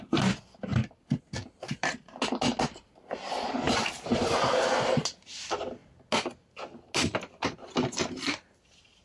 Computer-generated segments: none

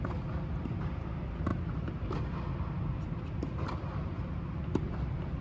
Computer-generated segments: none

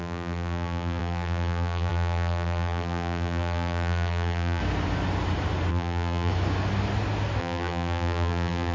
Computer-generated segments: 0.0-4.6 (vocoder, BigVGAN v2); 5.7-6.3; 7.4-8.7

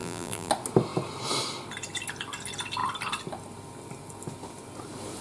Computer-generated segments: 0.0-0.5 (vocoder, BigVGAN v2)

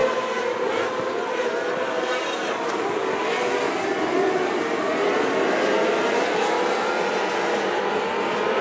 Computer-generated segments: 0.0-3.0 (vocoder, BigVGAN v2); 3.6-8.6

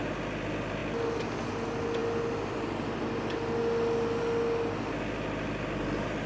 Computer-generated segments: none

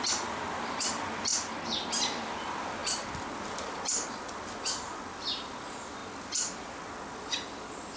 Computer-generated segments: 0.0-1.3 (vocoder, BigVGAN v2); 2.0-2.8; 3.4-8.0

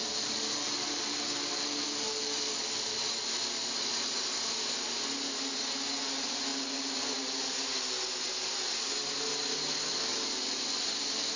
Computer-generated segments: 0.0-3.2 (vocoder, BigVGAN v2)